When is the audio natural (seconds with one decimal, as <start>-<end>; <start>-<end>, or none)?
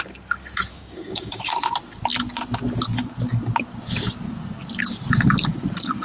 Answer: 0.0-0.7; 1.5-6.0